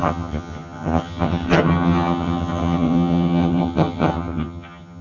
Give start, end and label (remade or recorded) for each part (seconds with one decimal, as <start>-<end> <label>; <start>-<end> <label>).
0.0-5.0 remade